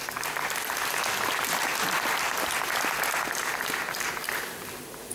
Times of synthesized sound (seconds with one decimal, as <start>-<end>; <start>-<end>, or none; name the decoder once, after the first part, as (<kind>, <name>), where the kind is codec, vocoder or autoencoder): none